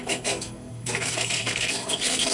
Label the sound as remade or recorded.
remade